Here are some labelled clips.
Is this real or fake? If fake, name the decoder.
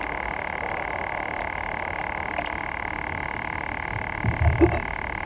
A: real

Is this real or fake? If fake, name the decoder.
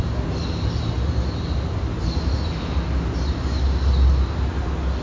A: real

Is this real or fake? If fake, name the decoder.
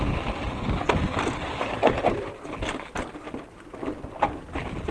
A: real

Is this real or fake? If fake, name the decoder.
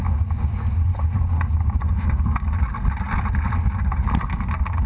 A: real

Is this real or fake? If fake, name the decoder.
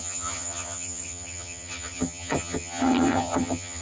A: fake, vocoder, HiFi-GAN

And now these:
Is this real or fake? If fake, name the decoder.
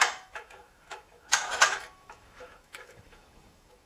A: fake, autoencoder, DAC-VAE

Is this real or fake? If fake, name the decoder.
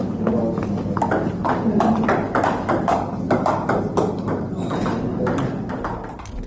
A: real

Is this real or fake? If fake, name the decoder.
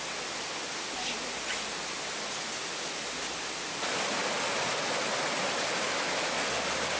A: real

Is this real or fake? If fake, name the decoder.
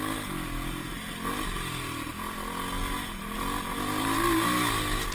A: real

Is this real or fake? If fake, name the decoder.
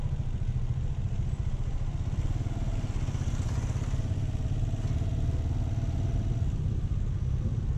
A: real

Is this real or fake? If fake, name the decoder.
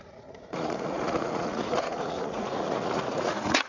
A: fake, vocoder, Vocos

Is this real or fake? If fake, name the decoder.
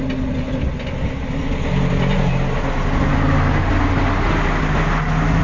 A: real